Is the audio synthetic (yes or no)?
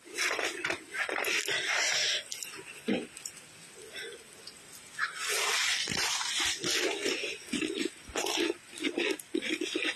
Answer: no